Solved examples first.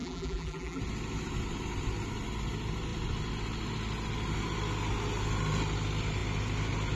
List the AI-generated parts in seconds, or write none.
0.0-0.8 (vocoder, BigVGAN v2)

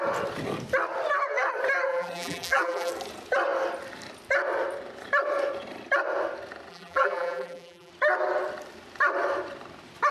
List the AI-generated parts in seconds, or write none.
1.9-2.9 (vocoder, BigVGAN v2); 6.7-7.9

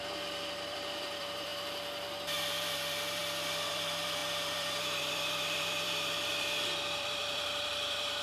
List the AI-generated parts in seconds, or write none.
0.0-1.5 (vocoder, BigVGAN v2); 2.5-3.2; 3.7-8.2

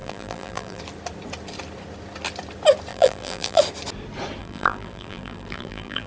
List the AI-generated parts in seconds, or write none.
0.0-0.8 (vocoder, BigVGAN v2); 2.9-3.6; 4.4-6.1

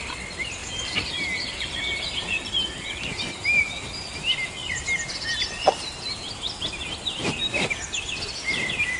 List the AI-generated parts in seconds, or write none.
0.6-3.7 (vocoder, BigVGAN v2); 7.2-7.8

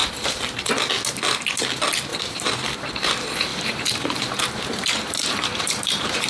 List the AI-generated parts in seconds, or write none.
0.0-0.7 (vocoder, BigVGAN v2); 2.1-2.9; 3.5-6.3

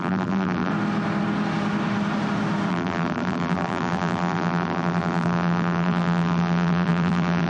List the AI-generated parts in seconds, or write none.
0.0-0.7 (vocoder, BigVGAN v2); 2.7-7.5